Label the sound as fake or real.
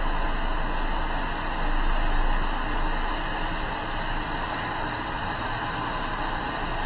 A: real